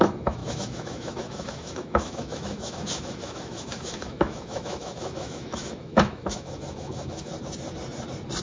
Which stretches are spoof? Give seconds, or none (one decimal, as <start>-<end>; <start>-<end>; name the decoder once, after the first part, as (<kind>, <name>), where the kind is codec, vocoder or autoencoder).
0.0-7.3 (autoencoder, DAC-VAE)